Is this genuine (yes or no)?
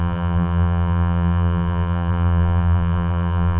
no